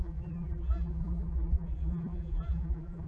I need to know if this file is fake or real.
fake